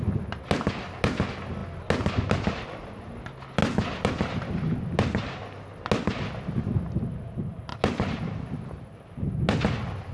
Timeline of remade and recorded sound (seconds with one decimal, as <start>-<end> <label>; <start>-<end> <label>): 0.0-10.1 recorded